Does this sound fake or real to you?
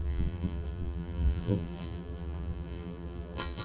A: fake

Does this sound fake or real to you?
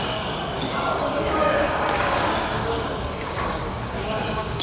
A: fake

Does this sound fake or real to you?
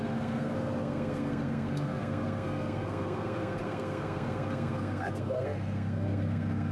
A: fake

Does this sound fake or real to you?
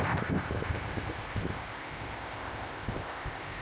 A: fake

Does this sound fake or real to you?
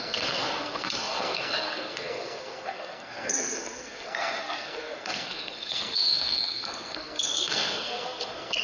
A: fake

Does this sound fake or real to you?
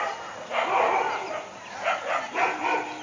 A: real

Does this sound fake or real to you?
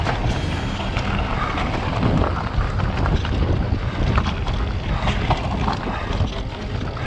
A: real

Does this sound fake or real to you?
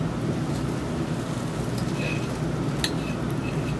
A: real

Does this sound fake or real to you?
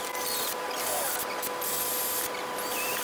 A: real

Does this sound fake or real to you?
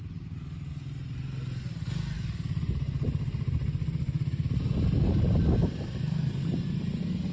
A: real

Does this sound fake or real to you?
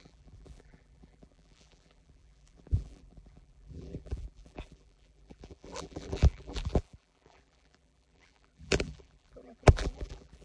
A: fake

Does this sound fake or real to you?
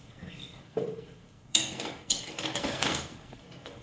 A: fake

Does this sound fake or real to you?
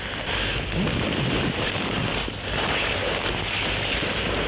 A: real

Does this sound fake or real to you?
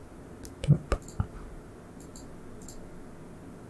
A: real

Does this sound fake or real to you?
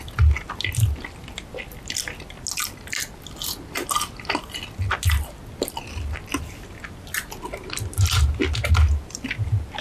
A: real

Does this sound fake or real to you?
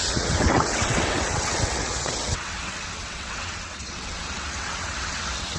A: fake